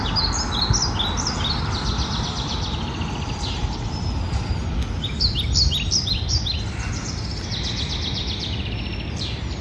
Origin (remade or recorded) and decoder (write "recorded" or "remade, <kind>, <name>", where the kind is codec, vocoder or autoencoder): recorded